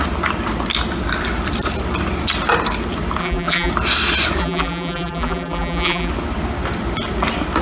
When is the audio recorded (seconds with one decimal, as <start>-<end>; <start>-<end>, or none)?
0.0-3.2; 3.7-4.4; 6.1-7.6